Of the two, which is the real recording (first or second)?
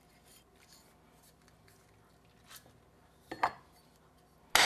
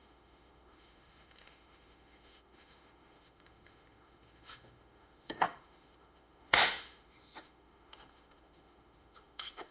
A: first